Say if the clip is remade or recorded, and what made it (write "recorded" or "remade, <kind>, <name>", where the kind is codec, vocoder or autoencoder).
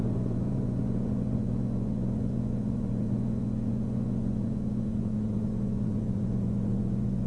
remade, vocoder, Vocos